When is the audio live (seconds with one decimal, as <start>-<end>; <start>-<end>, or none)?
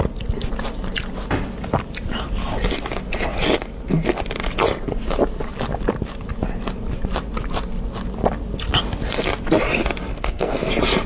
0.0-10.1; 10.7-11.1